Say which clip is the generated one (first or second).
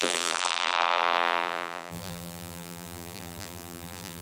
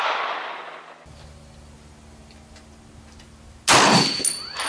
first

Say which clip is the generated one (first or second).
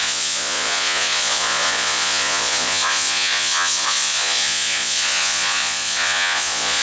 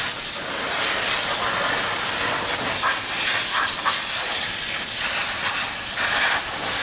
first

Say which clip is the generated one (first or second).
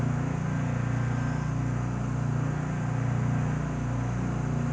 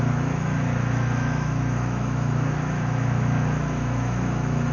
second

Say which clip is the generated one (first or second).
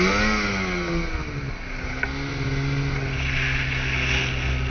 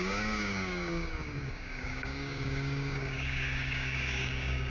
second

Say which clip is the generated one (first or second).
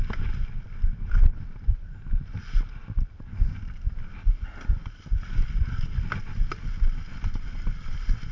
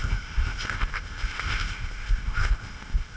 second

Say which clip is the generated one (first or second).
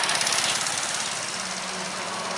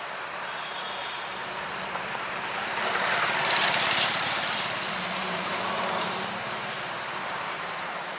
second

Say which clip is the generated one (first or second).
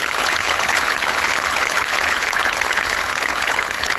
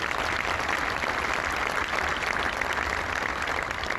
first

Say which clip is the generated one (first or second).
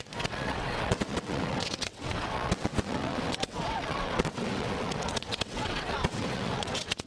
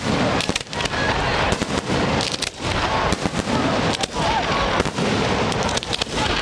first